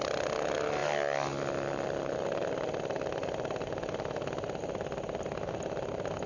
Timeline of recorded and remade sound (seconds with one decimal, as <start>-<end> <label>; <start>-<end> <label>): 0.0-6.3 recorded